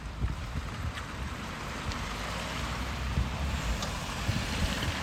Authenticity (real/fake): fake